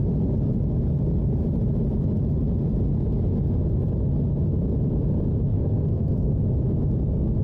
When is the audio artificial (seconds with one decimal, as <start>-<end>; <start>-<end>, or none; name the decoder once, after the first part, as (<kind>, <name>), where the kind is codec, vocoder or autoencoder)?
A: 5.5-6.3 (codec, SNAC)